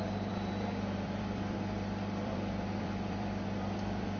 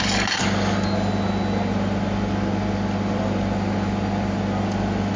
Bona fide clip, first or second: second